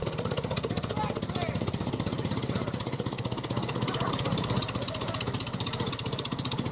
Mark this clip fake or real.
real